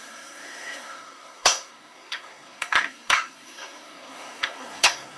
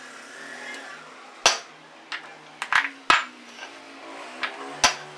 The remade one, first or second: first